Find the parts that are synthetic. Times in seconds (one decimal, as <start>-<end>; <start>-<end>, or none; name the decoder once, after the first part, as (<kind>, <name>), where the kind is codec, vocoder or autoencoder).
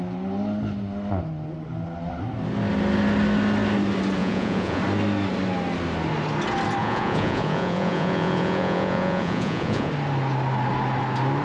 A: 4.2-4.8 (vocoder, Vocos); 6.8-9.9